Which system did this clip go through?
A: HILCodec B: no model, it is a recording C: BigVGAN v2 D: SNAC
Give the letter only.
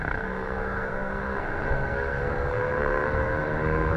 D